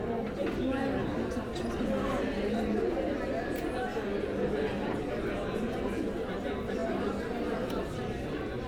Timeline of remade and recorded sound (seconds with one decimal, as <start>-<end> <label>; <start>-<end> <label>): 0.0-8.7 recorded

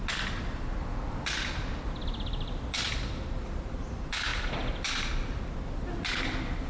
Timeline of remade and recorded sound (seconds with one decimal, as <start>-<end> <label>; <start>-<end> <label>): 0.0-6.7 recorded

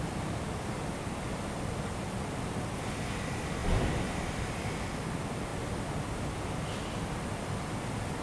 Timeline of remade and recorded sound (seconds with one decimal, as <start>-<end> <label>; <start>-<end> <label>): 0.0-3.6 recorded; 3.6-4.5 remade; 4.5-8.2 recorded

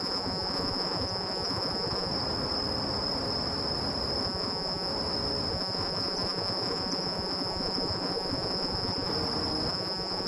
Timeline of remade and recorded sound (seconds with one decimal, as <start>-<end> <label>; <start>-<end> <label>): 0.0-2.1 remade; 2.1-4.2 recorded; 4.2-4.9 remade; 4.9-5.5 recorded; 5.5-9.1 remade; 9.1-9.7 recorded; 9.7-10.3 remade

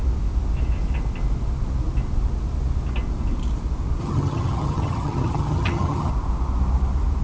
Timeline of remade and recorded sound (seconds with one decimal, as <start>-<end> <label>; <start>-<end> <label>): 0.0-4.0 recorded; 4.0-6.1 remade; 6.1-7.2 recorded

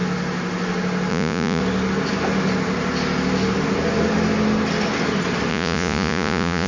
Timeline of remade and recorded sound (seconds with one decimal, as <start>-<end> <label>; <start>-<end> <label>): 0.0-1.1 recorded; 1.1-1.6 remade; 1.6-5.5 recorded; 5.5-6.7 remade

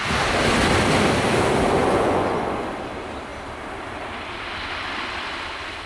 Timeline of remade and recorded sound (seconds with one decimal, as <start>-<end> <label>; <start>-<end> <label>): 0.0-1.8 recorded; 1.8-2.7 remade; 2.7-5.9 recorded

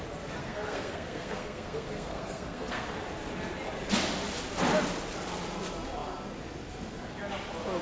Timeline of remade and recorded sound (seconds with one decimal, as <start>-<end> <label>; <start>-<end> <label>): 0.0-0.4 recorded; 0.4-2.9 remade; 2.9-7.8 recorded